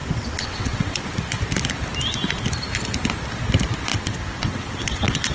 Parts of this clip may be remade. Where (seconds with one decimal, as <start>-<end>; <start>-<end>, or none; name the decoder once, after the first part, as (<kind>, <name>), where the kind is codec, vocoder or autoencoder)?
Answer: 0.0-1.0 (vocoder, WaveNeXt); 3.9-5.3